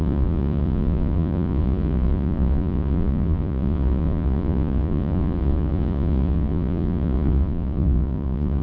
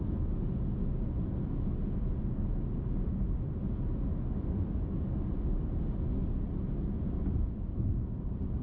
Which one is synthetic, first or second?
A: first